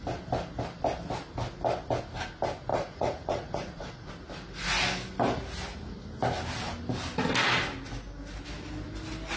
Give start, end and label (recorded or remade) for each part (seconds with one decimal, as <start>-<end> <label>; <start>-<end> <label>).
0.0-2.7 recorded; 2.7-4.1 remade; 4.1-9.4 recorded